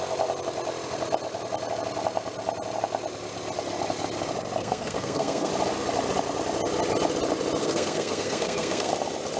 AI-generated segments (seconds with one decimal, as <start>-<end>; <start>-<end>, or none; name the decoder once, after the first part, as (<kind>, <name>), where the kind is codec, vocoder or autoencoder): 4.6-5.5 (codec, SNAC); 7.6-8.9